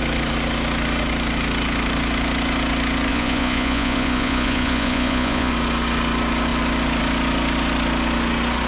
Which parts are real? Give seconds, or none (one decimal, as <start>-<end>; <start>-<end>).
0.0-3.1; 5.5-8.7